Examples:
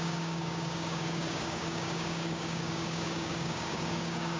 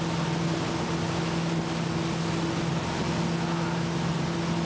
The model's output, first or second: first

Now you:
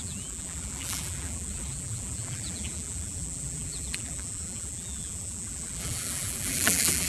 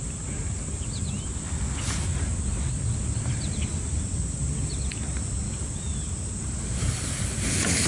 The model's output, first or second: first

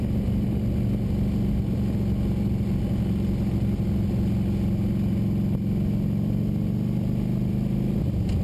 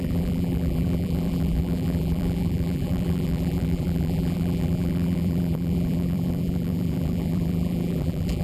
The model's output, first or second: second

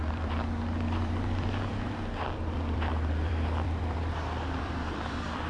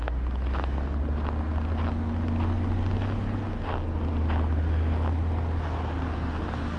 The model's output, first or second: first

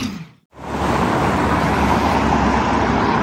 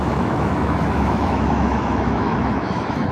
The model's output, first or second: second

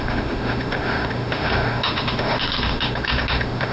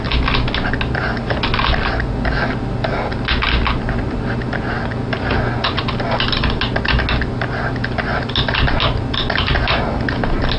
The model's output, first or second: first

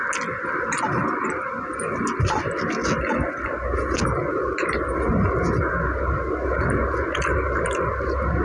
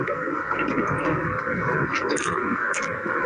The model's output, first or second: second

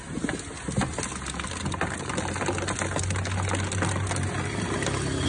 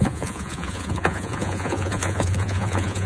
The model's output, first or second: second